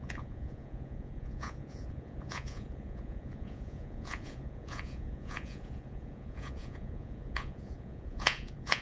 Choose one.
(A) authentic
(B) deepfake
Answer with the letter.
B